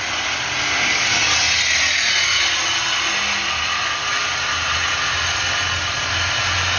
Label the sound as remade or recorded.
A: recorded